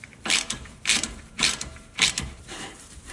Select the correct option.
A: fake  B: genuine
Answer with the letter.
A